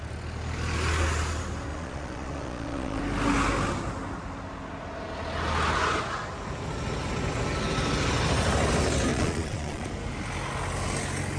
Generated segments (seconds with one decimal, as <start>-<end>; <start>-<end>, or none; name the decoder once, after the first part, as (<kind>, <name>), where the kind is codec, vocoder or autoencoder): 1.7-3.0 (vocoder, Vocos); 9.1-9.9